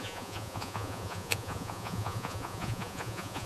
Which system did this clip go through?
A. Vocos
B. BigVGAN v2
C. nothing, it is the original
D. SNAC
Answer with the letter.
A